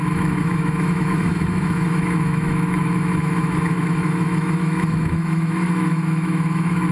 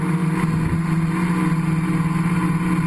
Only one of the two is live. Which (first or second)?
second